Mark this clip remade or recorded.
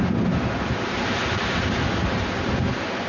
recorded